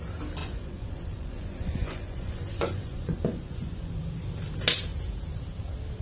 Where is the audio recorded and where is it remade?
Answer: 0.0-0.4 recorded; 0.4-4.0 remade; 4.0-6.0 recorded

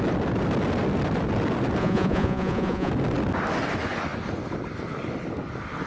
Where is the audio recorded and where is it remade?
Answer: 0.0-1.8 recorded; 1.8-2.9 remade; 2.9-5.9 recorded

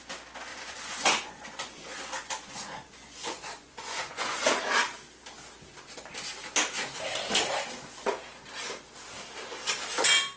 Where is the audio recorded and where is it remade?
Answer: 0.0-0.5 recorded; 0.5-4.6 remade; 4.6-10.4 recorded

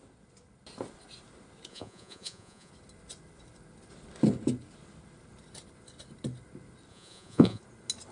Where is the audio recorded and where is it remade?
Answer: 0.0-1.7 recorded; 1.7-2.7 remade; 2.7-6.9 recorded; 6.9-7.6 remade; 7.6-8.1 recorded

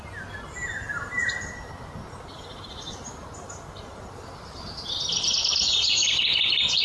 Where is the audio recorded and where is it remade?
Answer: 0.0-6.8 recorded

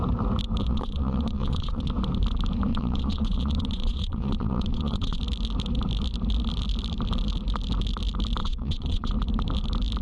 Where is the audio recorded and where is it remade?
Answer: 0.0-0.6 recorded; 0.6-1.9 remade; 1.9-2.7 recorded; 2.7-5.2 remade; 5.2-8.4 recorded; 8.4-9.1 remade; 9.1-10.0 recorded

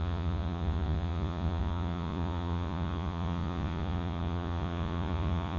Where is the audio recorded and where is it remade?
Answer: 0.0-5.6 remade

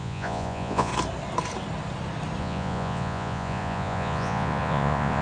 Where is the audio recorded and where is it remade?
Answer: 0.0-0.9 remade; 0.9-2.4 recorded; 2.4-5.2 remade